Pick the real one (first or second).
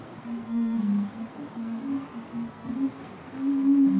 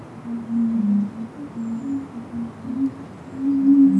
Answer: second